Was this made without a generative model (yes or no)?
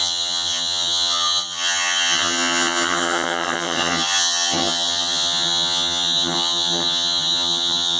no